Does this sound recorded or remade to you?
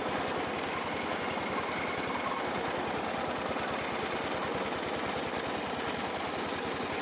recorded